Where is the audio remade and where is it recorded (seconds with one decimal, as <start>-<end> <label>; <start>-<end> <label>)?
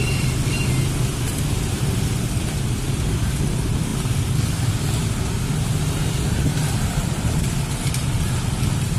0.0-6.5 recorded; 6.5-7.4 remade; 7.4-9.0 recorded